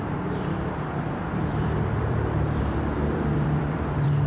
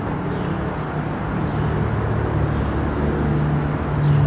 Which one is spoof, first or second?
first